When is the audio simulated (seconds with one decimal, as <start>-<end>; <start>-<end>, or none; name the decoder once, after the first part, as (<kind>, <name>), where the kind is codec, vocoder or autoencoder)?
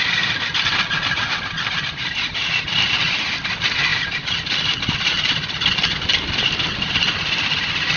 none